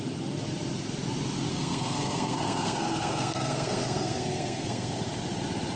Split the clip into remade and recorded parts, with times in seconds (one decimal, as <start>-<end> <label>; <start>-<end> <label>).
0.0-1.5 recorded; 1.5-5.0 remade; 5.0-5.8 recorded